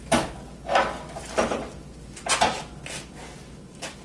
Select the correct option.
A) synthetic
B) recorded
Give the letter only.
B